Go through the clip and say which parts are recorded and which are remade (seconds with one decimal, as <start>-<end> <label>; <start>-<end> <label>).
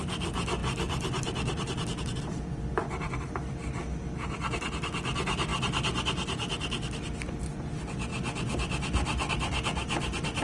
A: 0.0-2.8 remade; 2.8-3.3 recorded; 3.3-5.5 remade; 5.5-7.6 recorded; 7.6-10.4 remade